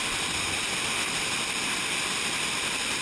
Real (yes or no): yes